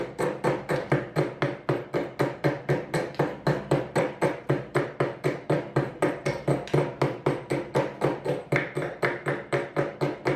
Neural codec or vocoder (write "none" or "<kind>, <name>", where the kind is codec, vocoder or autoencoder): none